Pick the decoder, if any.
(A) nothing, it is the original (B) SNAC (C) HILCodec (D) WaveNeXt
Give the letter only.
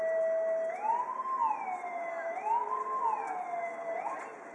A